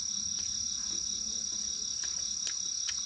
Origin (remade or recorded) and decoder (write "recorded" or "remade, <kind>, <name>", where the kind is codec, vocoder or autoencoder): recorded